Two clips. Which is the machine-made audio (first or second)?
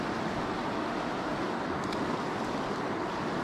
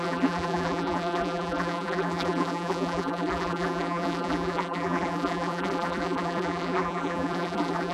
second